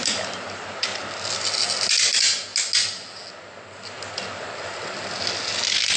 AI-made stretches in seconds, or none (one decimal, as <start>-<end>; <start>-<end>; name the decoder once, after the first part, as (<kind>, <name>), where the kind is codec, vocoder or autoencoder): none